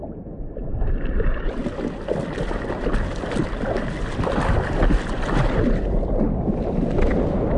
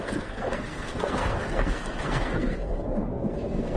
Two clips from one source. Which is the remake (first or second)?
second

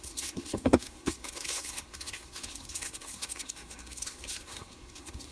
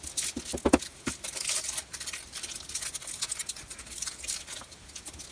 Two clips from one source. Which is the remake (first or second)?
first